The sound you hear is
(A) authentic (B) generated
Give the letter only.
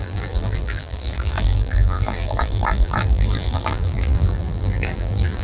B